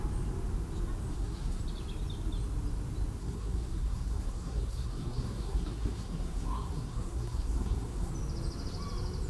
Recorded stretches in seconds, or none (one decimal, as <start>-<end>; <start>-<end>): 0.0-1.1; 1.6-3.2; 8.1-9.3